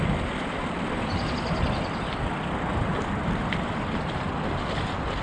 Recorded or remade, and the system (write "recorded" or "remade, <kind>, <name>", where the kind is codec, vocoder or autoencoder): recorded